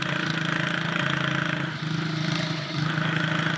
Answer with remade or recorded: recorded